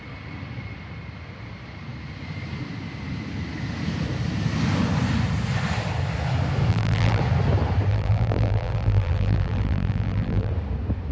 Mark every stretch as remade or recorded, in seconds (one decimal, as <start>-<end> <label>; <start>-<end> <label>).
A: 0.0-6.7 recorded; 6.7-7.2 remade; 7.2-7.9 recorded; 7.9-10.5 remade; 10.5-11.1 recorded